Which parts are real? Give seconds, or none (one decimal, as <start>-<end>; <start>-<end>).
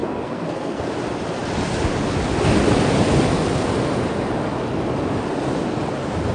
0.9-6.3